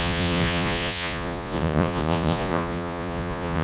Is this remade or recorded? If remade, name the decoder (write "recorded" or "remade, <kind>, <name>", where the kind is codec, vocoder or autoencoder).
remade, vocoder, Vocos